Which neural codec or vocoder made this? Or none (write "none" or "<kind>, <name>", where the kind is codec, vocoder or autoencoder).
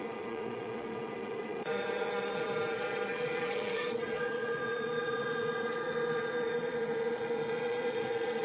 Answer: vocoder, Vocos